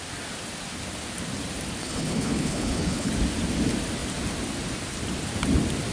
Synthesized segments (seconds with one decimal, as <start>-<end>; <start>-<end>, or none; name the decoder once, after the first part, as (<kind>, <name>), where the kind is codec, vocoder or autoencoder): 1.8-3.1 (codec, HILCodec)